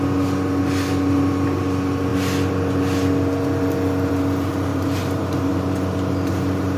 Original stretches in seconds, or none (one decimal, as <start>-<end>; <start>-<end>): 0.0-4.7; 5.5-6.8